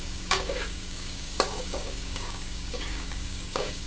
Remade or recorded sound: remade